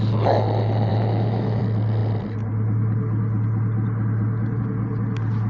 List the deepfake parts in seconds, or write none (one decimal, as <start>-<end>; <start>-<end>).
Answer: 0.9-1.6